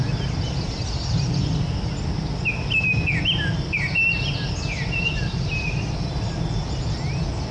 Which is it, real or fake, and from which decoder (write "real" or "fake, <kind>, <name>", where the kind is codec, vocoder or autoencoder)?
fake, vocoder, BigVGAN v2